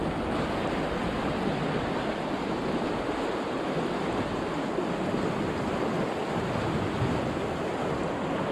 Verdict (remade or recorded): recorded